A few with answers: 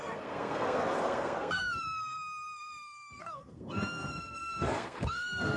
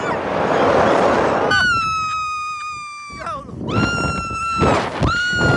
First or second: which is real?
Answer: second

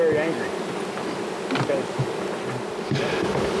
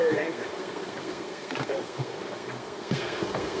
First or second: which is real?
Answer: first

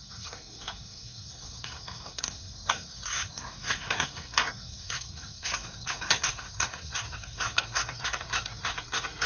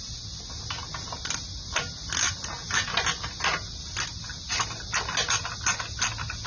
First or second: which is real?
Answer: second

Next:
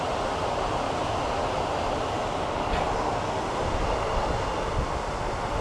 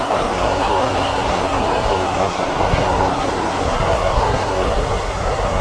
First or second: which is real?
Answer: first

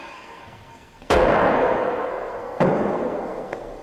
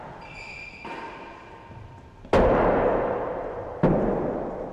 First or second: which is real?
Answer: second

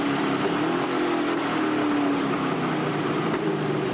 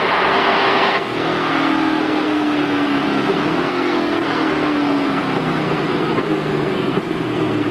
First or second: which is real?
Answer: first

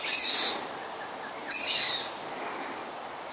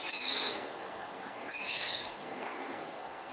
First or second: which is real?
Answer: first